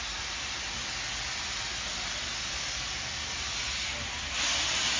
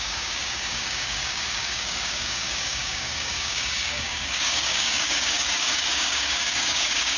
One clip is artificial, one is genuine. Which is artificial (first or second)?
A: second